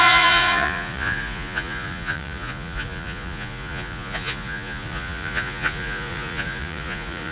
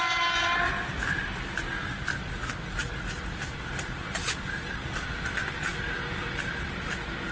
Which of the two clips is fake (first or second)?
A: first